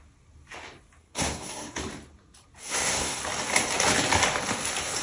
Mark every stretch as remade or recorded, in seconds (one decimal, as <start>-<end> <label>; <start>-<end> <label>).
0.0-1.0 recorded; 1.0-1.8 remade; 1.8-2.6 recorded; 2.6-3.2 remade; 3.2-5.0 recorded